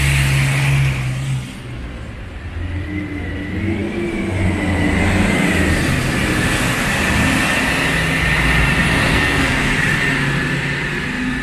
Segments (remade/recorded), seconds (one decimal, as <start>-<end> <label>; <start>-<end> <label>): 0.0-9.1 recorded; 9.1-9.7 remade; 9.7-11.4 recorded